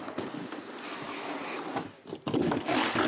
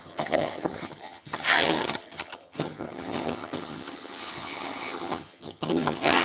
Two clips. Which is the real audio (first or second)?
first